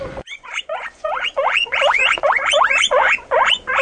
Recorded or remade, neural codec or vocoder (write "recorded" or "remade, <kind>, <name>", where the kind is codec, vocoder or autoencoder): remade, vocoder, Vocos